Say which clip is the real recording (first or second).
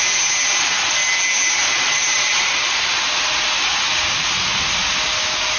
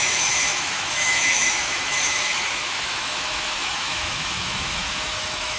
first